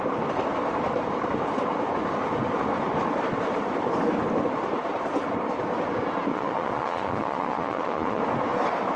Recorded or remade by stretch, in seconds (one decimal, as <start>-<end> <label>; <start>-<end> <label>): 0.0-6.3 recorded; 6.3-8.2 remade; 8.2-9.0 recorded